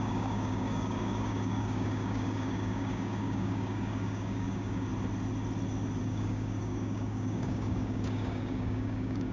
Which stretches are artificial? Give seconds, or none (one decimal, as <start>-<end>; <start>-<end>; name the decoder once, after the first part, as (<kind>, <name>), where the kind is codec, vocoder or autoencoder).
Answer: 0.0-4.9 (codec, DAC); 6.0-9.3

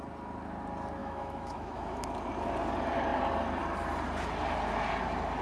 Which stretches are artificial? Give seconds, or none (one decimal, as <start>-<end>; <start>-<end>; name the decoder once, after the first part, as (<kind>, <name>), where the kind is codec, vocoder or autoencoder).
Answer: 1.0-2.0 (autoencoder, DAC-VAE)

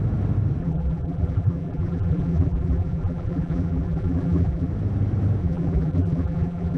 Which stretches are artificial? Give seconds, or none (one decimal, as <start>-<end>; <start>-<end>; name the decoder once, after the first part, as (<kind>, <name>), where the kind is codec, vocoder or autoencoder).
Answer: 0.6-4.7 (vocoder, BigVGAN v2); 5.4-6.8

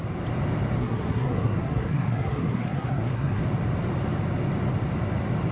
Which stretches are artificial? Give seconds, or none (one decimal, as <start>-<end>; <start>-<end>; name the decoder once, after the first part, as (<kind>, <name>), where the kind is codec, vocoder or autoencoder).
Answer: 0.8-3.4 (codec, SNAC)